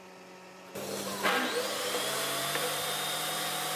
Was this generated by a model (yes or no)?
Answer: yes